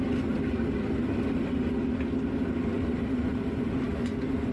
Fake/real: real